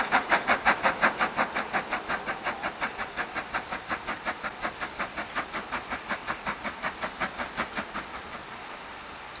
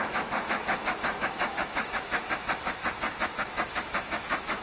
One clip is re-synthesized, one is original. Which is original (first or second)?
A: first